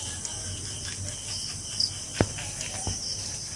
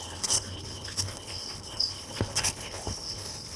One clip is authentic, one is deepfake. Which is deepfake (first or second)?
second